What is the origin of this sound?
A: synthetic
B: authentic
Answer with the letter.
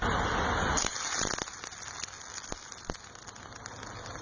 B